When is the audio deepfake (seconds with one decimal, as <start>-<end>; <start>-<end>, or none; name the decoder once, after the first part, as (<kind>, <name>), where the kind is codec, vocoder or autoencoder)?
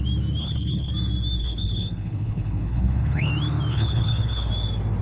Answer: 0.4-0.9 (codec, HILCodec); 1.4-3.3; 3.7-4.5